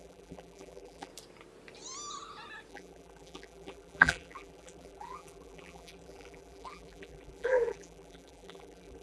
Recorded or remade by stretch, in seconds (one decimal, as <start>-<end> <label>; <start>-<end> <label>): 0.0-1.1 remade; 1.1-2.7 recorded; 2.7-9.0 remade